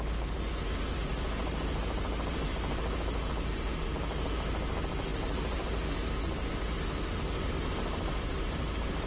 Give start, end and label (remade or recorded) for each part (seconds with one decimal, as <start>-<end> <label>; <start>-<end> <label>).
0.0-9.1 recorded